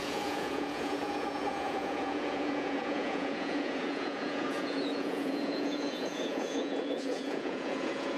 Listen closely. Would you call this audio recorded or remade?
remade